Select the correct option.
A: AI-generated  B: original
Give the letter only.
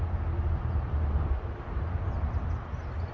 B